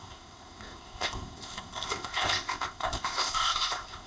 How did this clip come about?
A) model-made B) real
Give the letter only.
A